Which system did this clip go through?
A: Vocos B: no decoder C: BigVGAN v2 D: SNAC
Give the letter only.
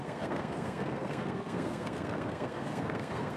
D